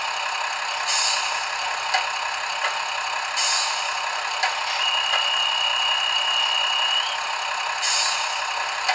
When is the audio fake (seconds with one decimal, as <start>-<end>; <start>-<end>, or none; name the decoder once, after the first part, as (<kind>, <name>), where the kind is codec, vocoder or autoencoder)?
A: none